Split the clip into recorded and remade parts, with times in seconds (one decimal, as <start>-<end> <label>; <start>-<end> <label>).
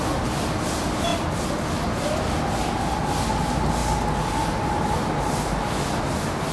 0.0-6.5 recorded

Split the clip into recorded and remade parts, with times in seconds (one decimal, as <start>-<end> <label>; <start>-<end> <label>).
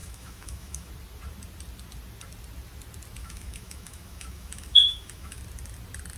0.0-0.9 remade; 0.9-3.2 recorded; 3.2-5.4 remade; 5.4-6.2 recorded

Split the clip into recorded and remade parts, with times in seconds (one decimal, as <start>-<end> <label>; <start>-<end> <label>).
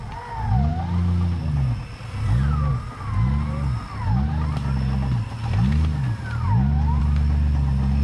0.0-8.0 recorded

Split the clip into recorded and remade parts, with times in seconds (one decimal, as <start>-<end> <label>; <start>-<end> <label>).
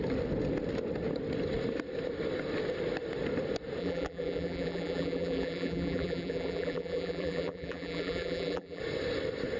0.0-3.8 recorded; 3.8-8.8 remade; 8.8-9.6 recorded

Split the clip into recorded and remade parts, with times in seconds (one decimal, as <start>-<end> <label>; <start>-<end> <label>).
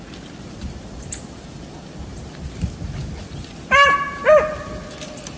0.0-5.4 recorded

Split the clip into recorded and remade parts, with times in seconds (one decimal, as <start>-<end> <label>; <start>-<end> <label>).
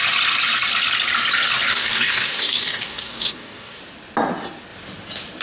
0.0-1.7 recorded; 1.7-3.8 remade; 3.8-5.4 recorded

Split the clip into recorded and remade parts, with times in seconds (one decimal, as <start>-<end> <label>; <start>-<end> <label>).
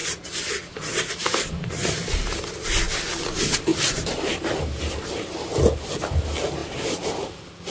0.0-3.7 recorded; 3.7-4.9 remade; 4.9-6.6 recorded; 6.6-7.2 remade; 7.2-7.7 recorded